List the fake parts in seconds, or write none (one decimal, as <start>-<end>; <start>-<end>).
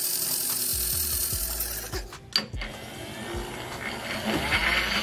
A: none